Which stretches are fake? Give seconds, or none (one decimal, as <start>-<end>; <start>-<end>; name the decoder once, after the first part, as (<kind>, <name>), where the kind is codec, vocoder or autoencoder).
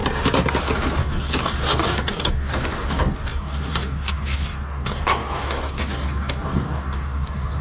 1.0-7.6 (codec, DAC)